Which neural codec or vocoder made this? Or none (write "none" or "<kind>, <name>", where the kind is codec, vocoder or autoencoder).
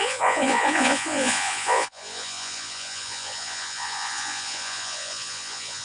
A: vocoder, Vocos